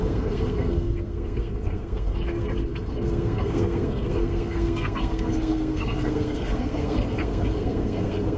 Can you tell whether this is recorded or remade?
remade